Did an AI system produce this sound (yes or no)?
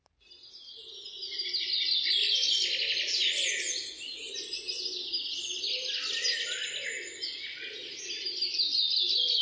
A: no